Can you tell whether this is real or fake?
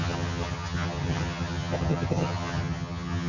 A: fake